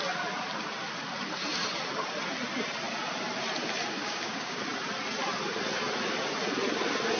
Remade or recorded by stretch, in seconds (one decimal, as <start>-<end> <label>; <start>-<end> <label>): 0.0-4.0 recorded; 4.0-4.6 remade; 4.6-7.2 recorded